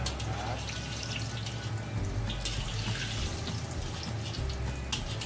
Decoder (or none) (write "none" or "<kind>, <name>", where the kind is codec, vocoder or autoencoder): none